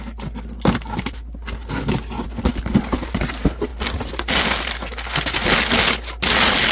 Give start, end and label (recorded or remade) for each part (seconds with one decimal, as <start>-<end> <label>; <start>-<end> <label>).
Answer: 0.0-6.7 recorded